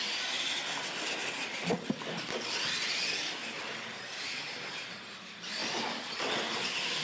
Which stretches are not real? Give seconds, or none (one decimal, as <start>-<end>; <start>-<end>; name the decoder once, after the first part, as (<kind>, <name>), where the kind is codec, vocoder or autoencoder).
none